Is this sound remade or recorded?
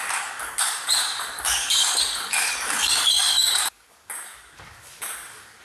remade